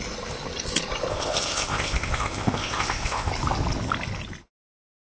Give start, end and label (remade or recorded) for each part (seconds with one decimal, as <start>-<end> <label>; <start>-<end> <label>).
0.0-1.1 recorded; 1.1-3.3 remade; 3.3-5.2 recorded